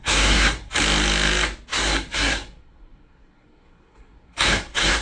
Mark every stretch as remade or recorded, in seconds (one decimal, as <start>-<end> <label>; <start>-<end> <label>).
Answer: 0.0-0.7 remade; 0.7-1.7 recorded; 1.7-5.0 remade